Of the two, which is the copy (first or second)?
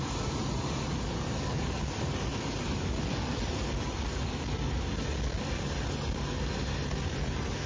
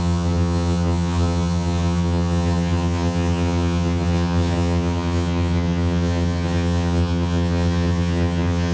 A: second